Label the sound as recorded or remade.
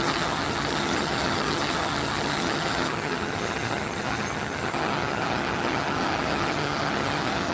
remade